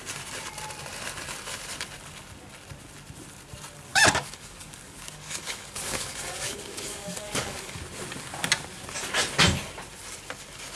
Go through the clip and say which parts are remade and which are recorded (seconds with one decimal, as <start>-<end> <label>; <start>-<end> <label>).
0.0-3.9 recorded; 3.9-7.8 remade; 7.8-10.8 recorded